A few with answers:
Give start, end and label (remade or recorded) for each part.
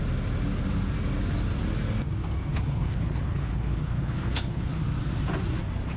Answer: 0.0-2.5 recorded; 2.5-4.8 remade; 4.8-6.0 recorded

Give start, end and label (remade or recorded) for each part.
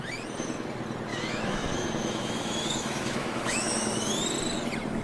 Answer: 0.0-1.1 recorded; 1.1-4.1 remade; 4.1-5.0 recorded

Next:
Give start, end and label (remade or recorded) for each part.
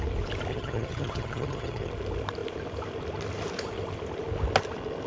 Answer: 0.0-0.5 recorded; 0.5-1.9 remade; 1.9-5.1 recorded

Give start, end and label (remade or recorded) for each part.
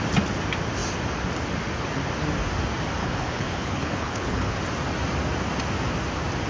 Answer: 0.0-3.0 recorded; 3.0-4.6 remade; 4.6-6.5 recorded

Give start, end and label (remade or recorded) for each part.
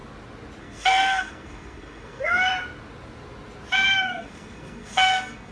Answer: 0.0-0.6 recorded; 0.6-2.5 remade; 2.5-3.9 recorded; 3.9-5.5 remade